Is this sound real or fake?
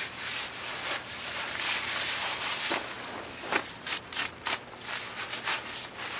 real